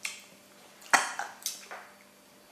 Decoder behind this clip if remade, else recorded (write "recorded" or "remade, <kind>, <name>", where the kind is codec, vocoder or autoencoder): recorded